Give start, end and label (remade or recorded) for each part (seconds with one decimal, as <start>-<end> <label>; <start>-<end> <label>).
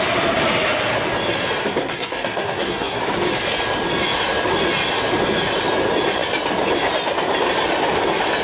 0.0-1.6 recorded; 1.6-3.0 remade; 3.0-8.4 recorded